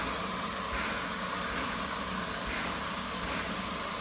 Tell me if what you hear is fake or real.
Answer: real